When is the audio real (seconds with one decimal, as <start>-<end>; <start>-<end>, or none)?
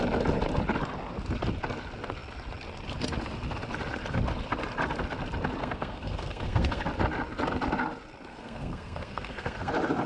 0.0-5.6; 6.8-8.3; 9.7-10.1